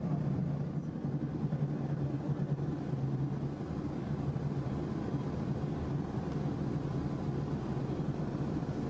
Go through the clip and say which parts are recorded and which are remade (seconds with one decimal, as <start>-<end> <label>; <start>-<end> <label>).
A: 0.0-0.4 remade; 0.4-5.1 recorded; 5.1-6.9 remade; 6.9-8.0 recorded; 8.0-8.9 remade